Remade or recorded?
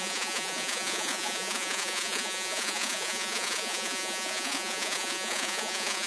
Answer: remade